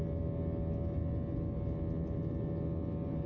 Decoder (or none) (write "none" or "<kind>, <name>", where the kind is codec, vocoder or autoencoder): none